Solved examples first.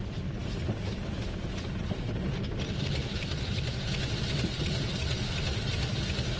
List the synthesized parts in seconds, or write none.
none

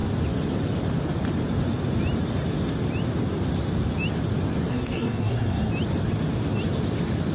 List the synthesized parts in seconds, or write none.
4.7-5.7 (codec, SNAC)

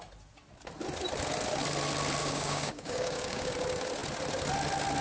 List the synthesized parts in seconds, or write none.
2.2-3.5 (codec, DAC)

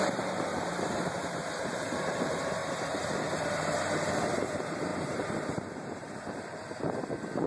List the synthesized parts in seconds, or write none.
0.0-2.6 (vocoder, BigVGAN v2); 4.1-7.5

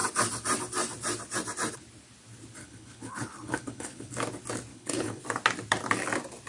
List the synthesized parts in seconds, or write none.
2.6-4.1 (codec, HILCodec); 4.7-5.2

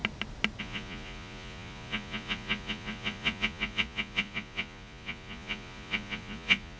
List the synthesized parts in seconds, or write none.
0.6-6.8 (vocoder, Vocos)